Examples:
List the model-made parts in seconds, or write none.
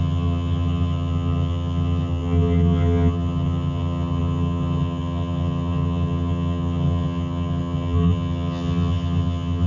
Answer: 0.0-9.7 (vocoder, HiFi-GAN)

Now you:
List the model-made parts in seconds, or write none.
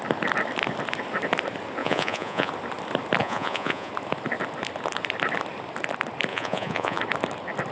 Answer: 1.8-2.5 (vocoder, Vocos); 3.2-3.9; 6.3-7.0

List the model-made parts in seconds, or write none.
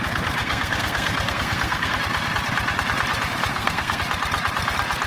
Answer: 0.4-2.0 (codec, SNAC); 3.5-4.0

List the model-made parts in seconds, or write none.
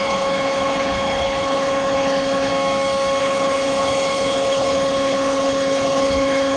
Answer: 0.0-2.5 (codec, HILCodec); 3.2-6.6